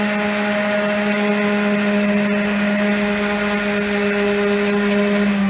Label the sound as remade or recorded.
recorded